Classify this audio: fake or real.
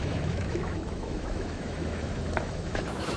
fake